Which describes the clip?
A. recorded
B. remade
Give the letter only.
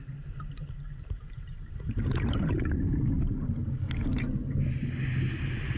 A